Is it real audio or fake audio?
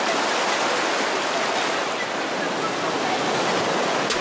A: real